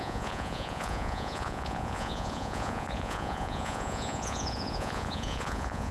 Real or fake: fake